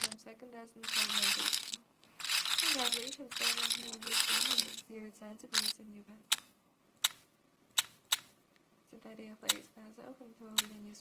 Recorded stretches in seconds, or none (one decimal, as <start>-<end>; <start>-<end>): 0.0-1.4; 2.2-3.8; 5.5-6.2; 6.8-11.0